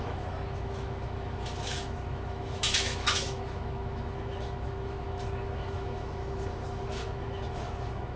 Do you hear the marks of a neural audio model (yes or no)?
yes